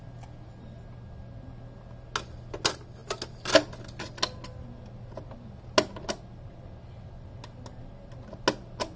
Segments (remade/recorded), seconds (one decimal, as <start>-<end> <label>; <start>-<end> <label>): 0.0-9.0 recorded